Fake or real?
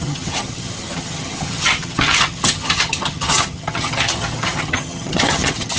fake